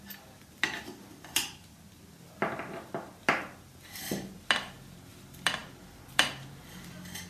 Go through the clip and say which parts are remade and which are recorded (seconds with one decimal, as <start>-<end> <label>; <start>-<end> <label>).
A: 0.0-5.6 recorded; 5.6-6.8 remade; 6.8-7.3 recorded